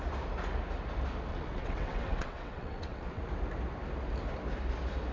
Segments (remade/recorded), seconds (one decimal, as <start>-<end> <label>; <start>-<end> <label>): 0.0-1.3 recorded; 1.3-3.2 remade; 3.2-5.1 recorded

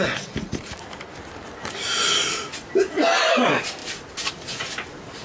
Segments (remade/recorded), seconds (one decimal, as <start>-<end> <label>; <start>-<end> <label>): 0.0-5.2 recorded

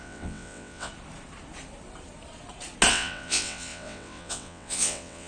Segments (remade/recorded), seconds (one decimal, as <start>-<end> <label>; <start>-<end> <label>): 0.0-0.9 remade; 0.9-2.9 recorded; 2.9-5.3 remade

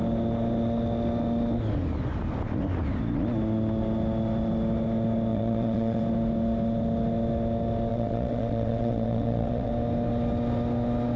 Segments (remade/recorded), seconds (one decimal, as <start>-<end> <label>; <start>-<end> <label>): 0.0-5.3 recorded; 5.3-6.0 remade; 6.0-7.9 recorded; 7.9-9.7 remade; 9.7-11.2 recorded

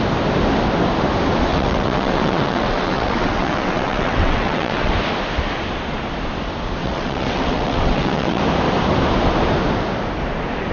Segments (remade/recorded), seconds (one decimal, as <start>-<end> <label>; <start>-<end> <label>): 0.0-1.5 recorded; 1.5-4.9 remade; 4.9-6.8 recorded; 6.8-8.4 remade; 8.4-10.7 recorded